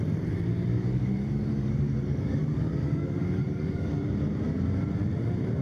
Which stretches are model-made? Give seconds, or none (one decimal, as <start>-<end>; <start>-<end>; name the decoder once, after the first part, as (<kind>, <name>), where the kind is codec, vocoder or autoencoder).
0.7-4.1 (codec, DAC)